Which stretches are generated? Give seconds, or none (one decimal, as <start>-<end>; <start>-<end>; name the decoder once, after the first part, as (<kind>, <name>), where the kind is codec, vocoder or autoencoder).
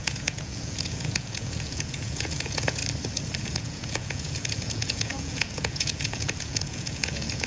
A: 0.0-2.8 (vocoder, Vocos); 3.4-7.5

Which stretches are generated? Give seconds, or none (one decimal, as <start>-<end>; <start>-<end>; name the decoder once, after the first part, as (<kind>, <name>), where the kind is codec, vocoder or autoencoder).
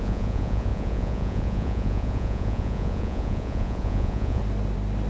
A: 0.0-4.4 (vocoder, Vocos)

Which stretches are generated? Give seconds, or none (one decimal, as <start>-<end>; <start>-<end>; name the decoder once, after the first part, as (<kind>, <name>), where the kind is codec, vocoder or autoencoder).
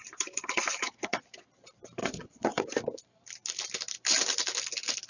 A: 2.0-2.6 (vocoder, Vocos)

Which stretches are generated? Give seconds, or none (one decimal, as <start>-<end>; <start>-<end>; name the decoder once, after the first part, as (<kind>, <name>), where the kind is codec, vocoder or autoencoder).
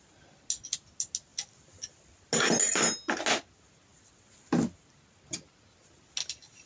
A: none